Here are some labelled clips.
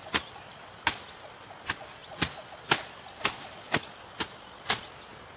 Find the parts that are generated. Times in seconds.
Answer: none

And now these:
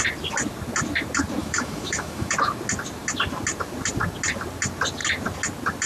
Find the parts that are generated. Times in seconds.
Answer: 1.4-2.3 (autoencoder, DAC-VAE)

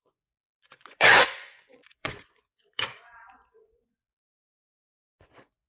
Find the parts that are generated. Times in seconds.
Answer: 0.0-5.7 (vocoder, Vocos)

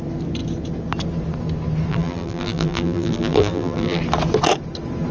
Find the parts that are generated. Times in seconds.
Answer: 1.9-4.0 (vocoder, BigVGAN v2)

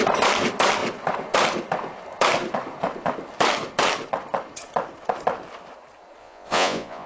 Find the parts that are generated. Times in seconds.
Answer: 6.2-7.1 (vocoder, Vocos)

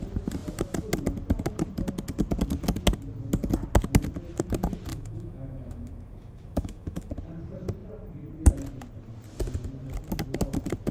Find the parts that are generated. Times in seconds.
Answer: 4.9-7.1 (autoencoder, DAC-VAE)

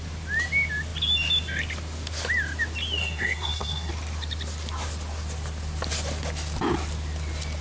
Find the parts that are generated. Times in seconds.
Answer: 3.0-3.9 (codec, SNAC)